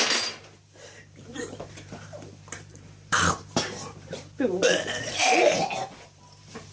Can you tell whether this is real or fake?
fake